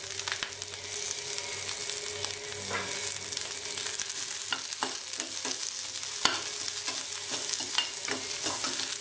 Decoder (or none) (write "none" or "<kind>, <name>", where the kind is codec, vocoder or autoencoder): none